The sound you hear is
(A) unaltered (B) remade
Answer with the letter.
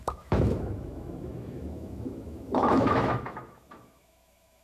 B